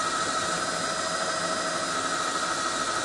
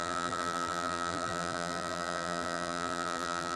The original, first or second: first